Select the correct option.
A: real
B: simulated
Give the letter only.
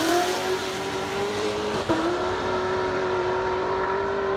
B